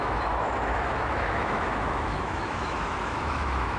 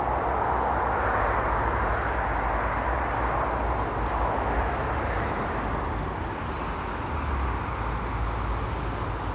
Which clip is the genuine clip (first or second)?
second